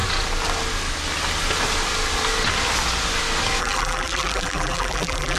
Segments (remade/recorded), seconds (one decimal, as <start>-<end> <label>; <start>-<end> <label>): 0.0-3.6 recorded; 3.6-5.4 remade